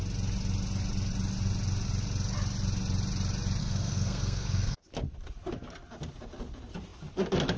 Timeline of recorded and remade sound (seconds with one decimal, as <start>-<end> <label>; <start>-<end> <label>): 0.0-3.6 recorded; 3.6-4.8 remade; 4.8-7.6 recorded